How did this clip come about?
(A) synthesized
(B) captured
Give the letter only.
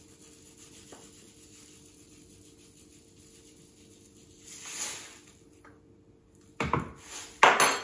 B